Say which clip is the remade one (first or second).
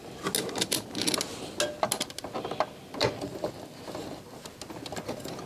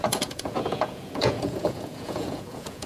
second